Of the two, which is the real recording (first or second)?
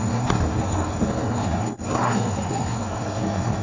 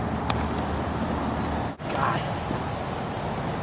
second